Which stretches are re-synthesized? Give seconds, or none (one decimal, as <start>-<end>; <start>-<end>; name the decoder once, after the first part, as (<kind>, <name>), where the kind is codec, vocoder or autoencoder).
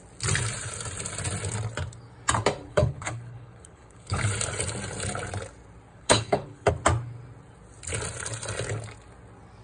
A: 2.7-4.3 (codec, HILCodec); 5.9-6.7